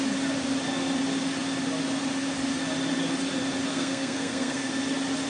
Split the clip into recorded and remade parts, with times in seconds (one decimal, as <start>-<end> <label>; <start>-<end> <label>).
0.0-3.7 recorded; 3.7-4.7 remade; 4.7-5.3 recorded